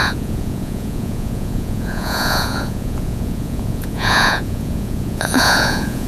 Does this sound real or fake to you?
fake